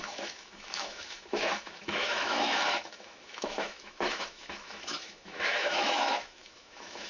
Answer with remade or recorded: remade